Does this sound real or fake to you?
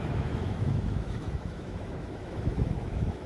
fake